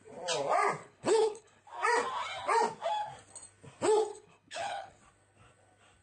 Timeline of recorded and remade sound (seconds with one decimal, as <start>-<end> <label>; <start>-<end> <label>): 0.0-0.8 recorded; 0.8-1.6 remade; 1.6-4.1 recorded; 4.1-5.0 remade; 5.0-6.0 recorded